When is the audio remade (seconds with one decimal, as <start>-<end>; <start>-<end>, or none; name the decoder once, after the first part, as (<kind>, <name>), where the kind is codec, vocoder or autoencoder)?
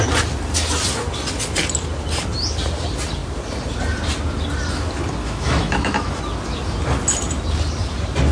5.2-6.2 (autoencoder, DAC-VAE)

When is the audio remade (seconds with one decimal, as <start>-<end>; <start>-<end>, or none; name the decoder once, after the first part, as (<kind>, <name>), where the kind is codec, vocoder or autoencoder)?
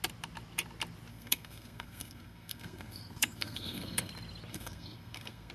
1.1-4.1 (codec, SNAC); 4.5-5.5